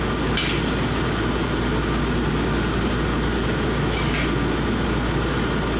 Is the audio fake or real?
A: real